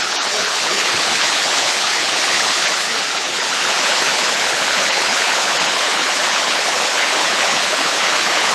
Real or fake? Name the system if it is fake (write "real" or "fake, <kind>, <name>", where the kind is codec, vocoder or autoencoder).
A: fake, codec, HILCodec